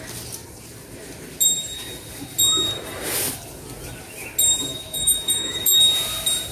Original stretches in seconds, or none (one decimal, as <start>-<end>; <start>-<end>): 0.0-4.7; 5.8-6.5